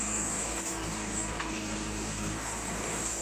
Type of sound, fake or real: fake